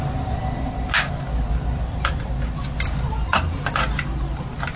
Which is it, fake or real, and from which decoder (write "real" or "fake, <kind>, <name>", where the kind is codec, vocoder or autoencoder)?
real